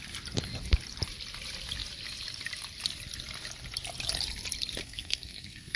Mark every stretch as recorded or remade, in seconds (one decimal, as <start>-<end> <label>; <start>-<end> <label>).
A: 0.0-4.8 recorded; 4.8-5.8 remade